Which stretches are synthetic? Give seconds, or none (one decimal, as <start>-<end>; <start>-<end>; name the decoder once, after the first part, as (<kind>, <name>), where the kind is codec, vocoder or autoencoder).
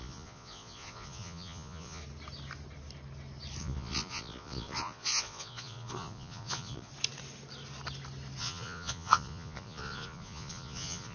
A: 0.0-2.0 (vocoder, Vocos); 3.6-6.9; 8.4-11.1